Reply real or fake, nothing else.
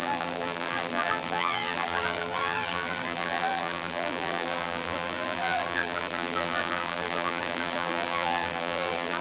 fake